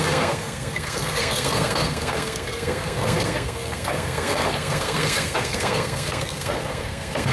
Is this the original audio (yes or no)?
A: no